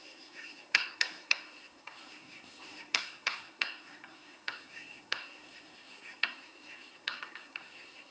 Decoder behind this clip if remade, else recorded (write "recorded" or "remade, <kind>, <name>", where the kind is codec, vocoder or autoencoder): remade, codec, SNAC